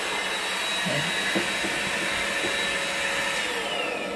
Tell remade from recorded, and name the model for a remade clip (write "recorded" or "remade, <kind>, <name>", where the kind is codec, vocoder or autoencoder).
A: recorded